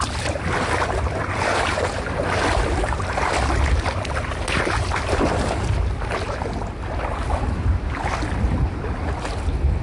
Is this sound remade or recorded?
recorded